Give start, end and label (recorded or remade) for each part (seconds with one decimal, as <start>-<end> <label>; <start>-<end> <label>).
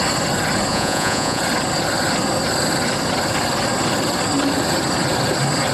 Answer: 0.0-0.7 recorded; 0.7-1.4 remade; 1.4-5.7 recorded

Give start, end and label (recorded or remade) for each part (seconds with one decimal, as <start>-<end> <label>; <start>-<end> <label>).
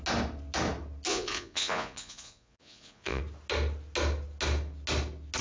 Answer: 0.0-1.1 recorded; 1.1-3.2 remade; 3.2-5.4 recorded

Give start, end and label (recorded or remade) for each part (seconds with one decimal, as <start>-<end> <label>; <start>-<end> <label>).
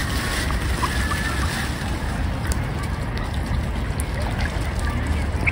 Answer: 0.0-5.5 recorded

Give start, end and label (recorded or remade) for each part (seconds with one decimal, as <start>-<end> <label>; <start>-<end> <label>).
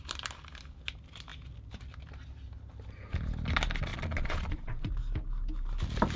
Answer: 0.0-3.9 recorded; 3.9-4.9 remade; 4.9-6.2 recorded